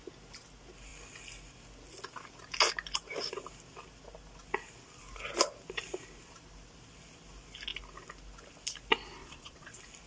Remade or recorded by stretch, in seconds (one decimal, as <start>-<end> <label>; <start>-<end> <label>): 0.0-9.2 recorded; 9.2-9.7 remade; 9.7-10.1 recorded